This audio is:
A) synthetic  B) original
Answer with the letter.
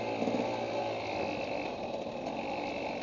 B